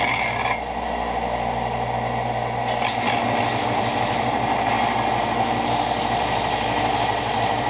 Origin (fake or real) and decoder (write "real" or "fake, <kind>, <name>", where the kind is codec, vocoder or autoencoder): real